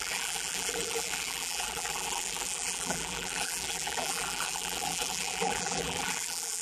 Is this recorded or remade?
remade